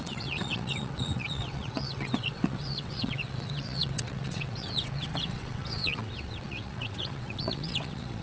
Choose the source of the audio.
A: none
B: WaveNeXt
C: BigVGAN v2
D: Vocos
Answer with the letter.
B